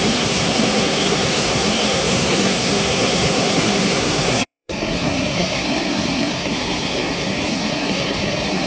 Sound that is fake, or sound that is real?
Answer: fake